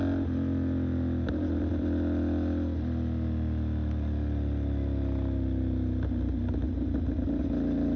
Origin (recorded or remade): recorded